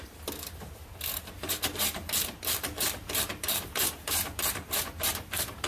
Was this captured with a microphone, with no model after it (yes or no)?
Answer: no